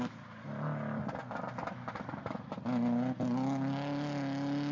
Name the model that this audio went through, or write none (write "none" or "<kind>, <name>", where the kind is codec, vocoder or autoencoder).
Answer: none